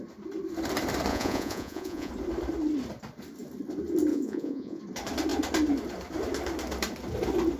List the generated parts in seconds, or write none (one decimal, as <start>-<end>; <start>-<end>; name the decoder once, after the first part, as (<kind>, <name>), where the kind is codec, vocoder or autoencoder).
1.1-2.1 (vocoder, Vocos); 4.1-4.8